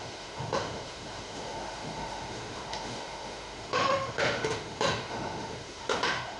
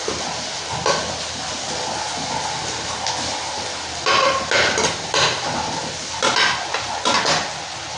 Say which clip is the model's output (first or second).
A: first